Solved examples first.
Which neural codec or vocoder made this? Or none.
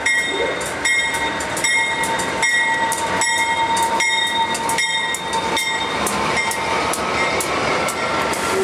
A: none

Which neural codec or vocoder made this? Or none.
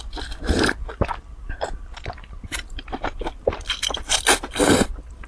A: vocoder, BigVGAN v2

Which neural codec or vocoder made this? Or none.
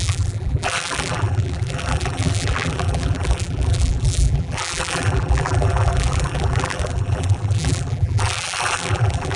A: vocoder, BigVGAN v2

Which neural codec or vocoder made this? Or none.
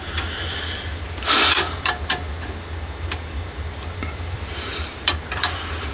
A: vocoder, BigVGAN v2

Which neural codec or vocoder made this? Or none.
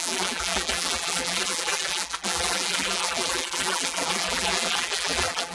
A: vocoder, BigVGAN v2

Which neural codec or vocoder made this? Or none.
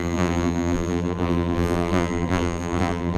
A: vocoder, BigVGAN v2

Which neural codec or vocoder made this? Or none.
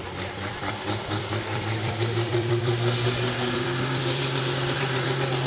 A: vocoder, BigVGAN v2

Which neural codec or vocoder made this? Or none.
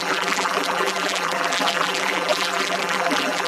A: vocoder, BigVGAN v2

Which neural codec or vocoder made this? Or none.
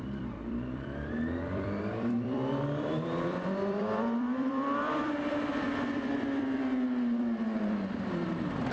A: vocoder, BigVGAN v2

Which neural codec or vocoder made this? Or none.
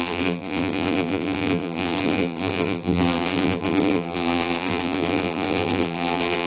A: vocoder, BigVGAN v2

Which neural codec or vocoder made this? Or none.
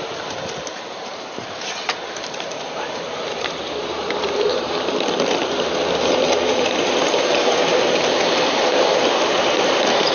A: vocoder, BigVGAN v2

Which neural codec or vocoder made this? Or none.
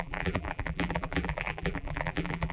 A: vocoder, BigVGAN v2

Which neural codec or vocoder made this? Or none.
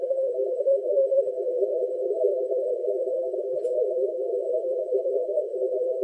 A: vocoder, BigVGAN v2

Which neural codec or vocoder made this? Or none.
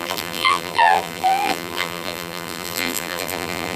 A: vocoder, BigVGAN v2